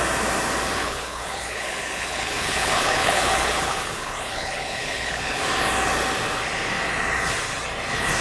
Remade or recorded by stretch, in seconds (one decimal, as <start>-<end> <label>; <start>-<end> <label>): 0.0-0.8 recorded; 0.8-5.4 remade; 5.4-8.2 recorded